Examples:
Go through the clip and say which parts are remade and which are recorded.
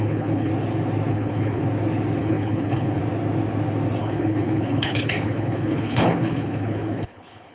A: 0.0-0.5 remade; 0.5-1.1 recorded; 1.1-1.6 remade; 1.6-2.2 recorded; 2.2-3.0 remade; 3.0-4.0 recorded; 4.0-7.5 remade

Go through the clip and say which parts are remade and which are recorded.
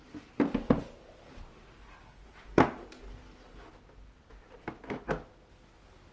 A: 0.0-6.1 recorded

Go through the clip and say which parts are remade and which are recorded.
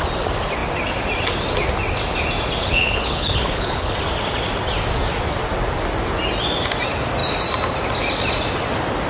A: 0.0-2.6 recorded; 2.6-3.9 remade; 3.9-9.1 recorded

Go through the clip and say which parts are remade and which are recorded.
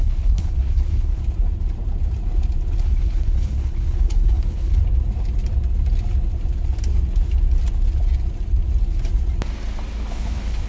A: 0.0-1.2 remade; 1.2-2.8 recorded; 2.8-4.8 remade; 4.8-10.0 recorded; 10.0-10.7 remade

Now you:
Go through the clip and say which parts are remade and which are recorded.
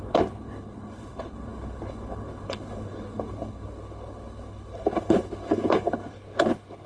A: 0.0-6.9 remade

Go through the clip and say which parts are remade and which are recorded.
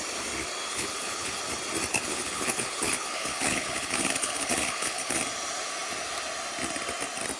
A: 0.0-0.7 recorded; 0.7-1.4 remade; 1.4-1.9 recorded; 1.9-5.2 remade; 5.2-7.4 recorded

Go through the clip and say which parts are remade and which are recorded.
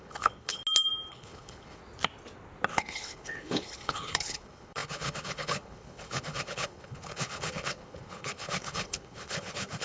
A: 0.0-0.6 remade; 0.6-1.1 recorded; 1.1-1.8 remade; 1.8-2.7 recorded; 2.7-9.8 remade